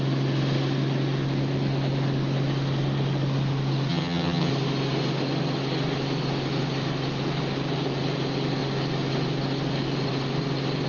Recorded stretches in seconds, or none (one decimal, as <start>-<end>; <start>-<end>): 0.0-3.9; 4.5-10.9